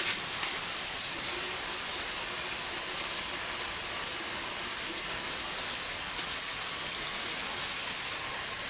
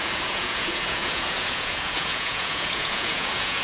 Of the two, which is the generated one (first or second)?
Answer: second